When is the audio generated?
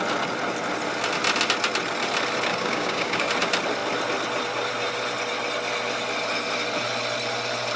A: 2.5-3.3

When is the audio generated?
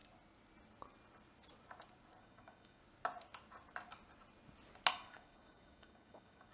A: 2.2-2.8; 4.9-6.5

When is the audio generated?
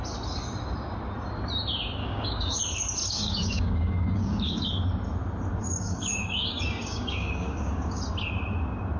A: 2.0-2.6; 3.0-4.7; 5.6-8.0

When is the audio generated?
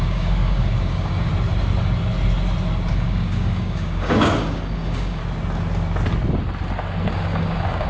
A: 0.0-1.3; 2.9-5.2; 7.1-7.9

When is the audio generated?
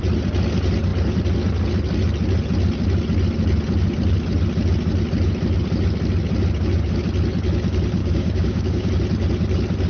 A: 8.0-8.9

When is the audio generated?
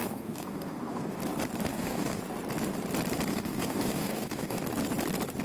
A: 0.0-1.2; 1.7-2.2; 3.3-4.6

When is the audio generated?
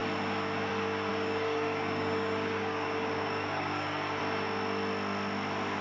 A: 1.1-4.2